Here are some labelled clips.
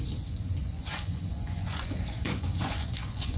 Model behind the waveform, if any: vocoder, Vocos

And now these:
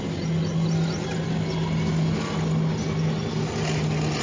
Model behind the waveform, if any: none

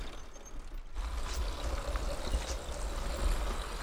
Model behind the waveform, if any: none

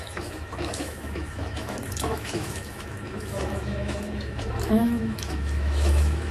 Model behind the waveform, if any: autoencoder, DAC-VAE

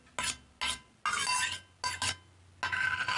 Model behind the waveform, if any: none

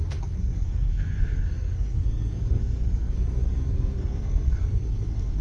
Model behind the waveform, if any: codec, SNAC